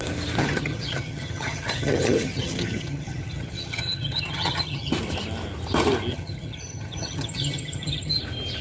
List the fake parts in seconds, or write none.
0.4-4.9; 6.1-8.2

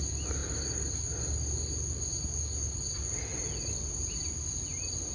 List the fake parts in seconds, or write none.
none

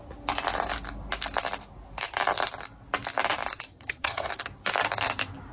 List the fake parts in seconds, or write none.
3.7-4.3

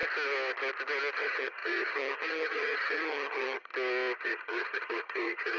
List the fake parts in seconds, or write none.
1.1-3.7; 4.2-5.6

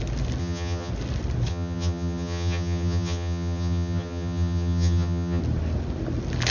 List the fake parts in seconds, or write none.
0.4-0.9; 1.5-5.4

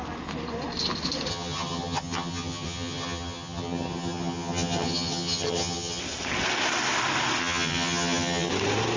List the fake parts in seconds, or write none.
1.3-6.0; 7.4-8.5

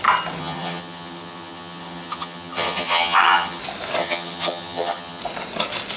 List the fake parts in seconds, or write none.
0.4-3.6; 4.0-5.2